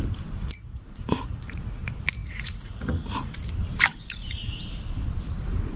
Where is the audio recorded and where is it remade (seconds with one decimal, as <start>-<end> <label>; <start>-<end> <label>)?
0.0-0.4 recorded; 0.4-1.8 remade; 1.8-2.2 recorded; 2.2-3.3 remade; 3.3-3.9 recorded; 3.9-4.7 remade; 4.7-5.8 recorded